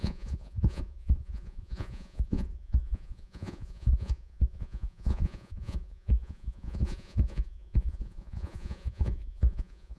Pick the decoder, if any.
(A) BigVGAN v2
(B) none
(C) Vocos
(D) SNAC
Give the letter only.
C